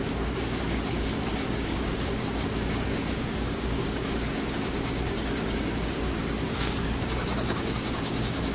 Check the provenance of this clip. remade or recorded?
remade